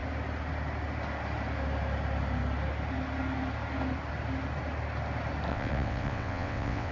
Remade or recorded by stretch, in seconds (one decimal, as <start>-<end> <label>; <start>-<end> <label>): 0.0-5.5 recorded; 5.5-6.9 remade